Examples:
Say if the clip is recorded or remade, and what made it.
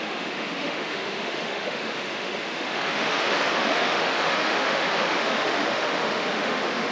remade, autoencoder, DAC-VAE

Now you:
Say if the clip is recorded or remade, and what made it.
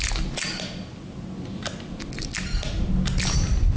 recorded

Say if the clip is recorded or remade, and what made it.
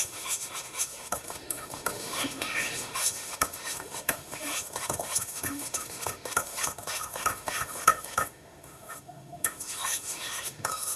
remade, autoencoder, DAC-VAE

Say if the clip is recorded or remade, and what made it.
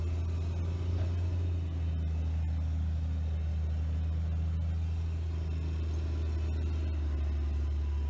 recorded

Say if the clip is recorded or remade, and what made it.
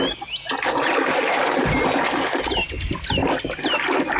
recorded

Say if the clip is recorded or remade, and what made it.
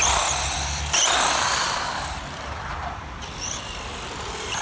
recorded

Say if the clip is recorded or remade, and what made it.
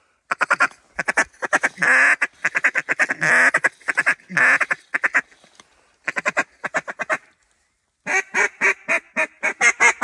recorded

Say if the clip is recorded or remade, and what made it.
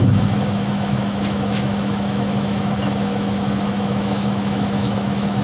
remade, autoencoder, DAC-VAE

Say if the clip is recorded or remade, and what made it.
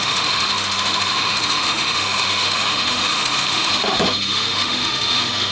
remade, autoencoder, DAC-VAE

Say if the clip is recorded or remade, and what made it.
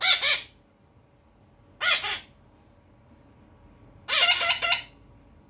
recorded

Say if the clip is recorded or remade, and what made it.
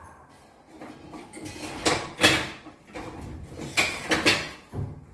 recorded